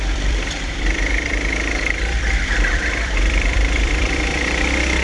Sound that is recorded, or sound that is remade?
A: remade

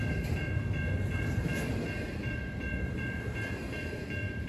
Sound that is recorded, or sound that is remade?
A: remade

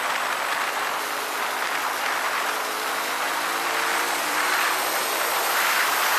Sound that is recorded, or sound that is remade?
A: remade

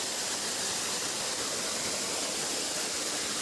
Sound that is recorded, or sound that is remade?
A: recorded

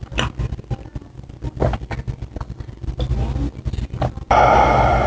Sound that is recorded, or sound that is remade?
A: recorded